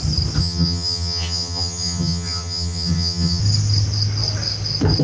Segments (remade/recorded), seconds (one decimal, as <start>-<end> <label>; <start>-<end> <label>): 0.0-0.4 recorded; 0.4-3.4 remade; 3.4-5.0 recorded